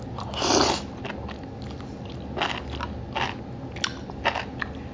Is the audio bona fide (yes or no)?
yes